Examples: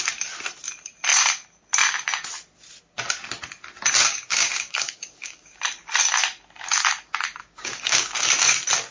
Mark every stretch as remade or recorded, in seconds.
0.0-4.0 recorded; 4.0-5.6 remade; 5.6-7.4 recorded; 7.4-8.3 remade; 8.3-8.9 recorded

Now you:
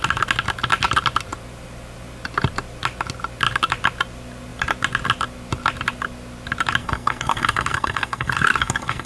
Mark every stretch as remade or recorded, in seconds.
0.0-6.8 recorded; 6.8-9.1 remade

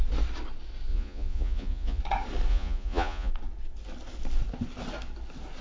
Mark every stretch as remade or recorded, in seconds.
0.0-0.9 recorded; 0.9-2.0 remade; 2.0-2.5 recorded; 2.5-3.3 remade; 3.3-5.6 recorded

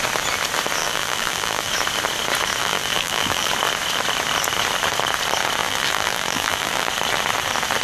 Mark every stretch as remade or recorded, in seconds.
0.0-0.8 recorded; 0.8-1.7 remade; 1.7-2.6 recorded; 2.6-3.5 remade; 3.5-5.6 recorded; 5.6-6.9 remade; 6.9-7.8 recorded

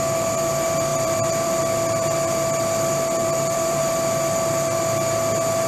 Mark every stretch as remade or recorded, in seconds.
0.0-0.9 recorded; 0.9-1.6 remade; 1.6-3.2 recorded; 3.2-3.8 remade; 3.8-5.7 recorded

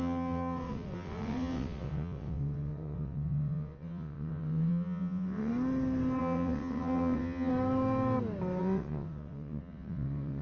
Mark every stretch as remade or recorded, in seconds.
0.0-5.5 remade; 5.5-6.2 recorded; 6.2-7.5 remade; 7.5-8.6 recorded; 8.6-10.4 remade

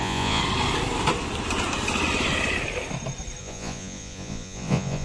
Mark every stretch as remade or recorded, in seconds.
0.0-0.4 remade; 0.4-3.4 recorded; 3.4-5.0 remade

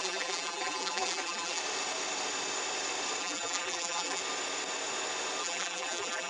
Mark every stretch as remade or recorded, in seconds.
0.0-1.6 remade; 1.6-3.2 recorded; 3.2-4.2 remade; 4.2-5.4 recorded; 5.4-6.3 remade